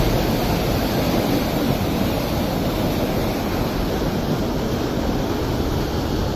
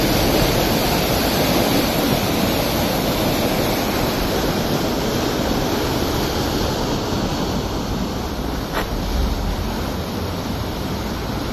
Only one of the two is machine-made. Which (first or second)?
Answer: second